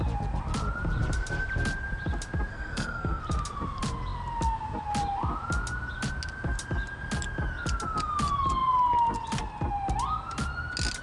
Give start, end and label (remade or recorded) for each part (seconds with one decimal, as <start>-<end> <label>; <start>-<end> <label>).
0.0-2.5 recorded; 2.5-3.2 remade; 3.2-11.0 recorded